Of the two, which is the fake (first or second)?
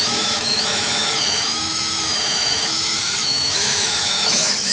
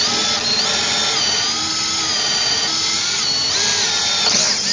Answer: first